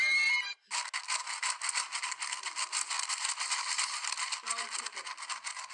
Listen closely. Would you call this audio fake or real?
real